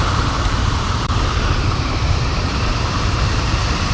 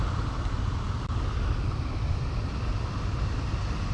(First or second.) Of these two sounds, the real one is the second